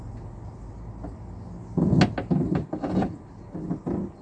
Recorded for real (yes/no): yes